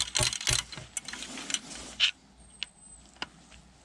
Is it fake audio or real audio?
real